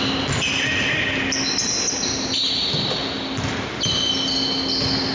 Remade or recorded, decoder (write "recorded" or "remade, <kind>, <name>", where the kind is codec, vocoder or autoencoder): recorded